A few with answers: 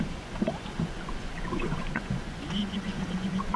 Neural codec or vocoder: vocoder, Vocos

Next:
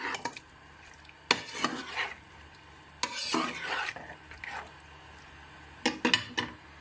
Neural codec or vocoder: none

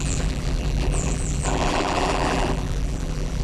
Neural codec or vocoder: vocoder, BigVGAN v2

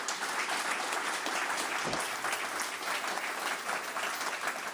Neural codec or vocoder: none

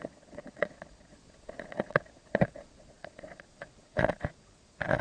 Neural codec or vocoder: vocoder, Vocos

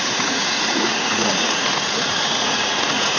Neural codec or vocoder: vocoder, Vocos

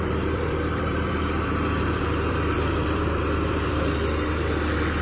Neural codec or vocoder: vocoder, BigVGAN v2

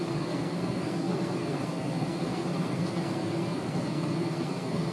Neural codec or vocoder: codec, SNAC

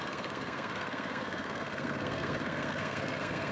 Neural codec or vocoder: codec, SNAC